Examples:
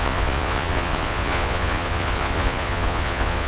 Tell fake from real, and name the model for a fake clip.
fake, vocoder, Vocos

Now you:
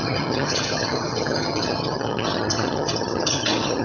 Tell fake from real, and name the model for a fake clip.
fake, vocoder, HiFi-GAN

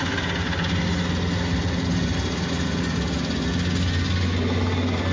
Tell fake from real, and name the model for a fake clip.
real